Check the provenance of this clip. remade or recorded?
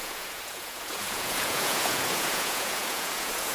remade